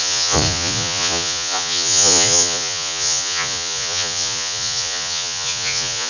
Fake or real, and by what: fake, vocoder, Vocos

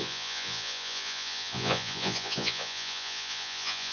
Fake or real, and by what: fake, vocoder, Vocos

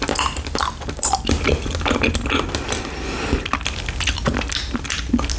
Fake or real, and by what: real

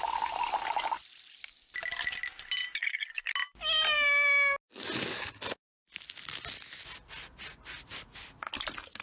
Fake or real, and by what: real